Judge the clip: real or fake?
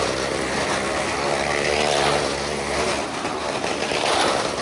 real